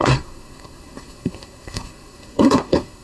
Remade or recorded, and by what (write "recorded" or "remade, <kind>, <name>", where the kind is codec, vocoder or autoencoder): remade, codec, SNAC